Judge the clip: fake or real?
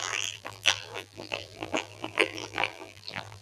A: fake